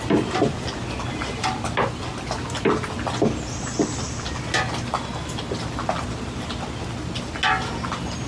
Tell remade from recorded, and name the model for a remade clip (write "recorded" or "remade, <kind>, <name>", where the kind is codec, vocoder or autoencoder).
recorded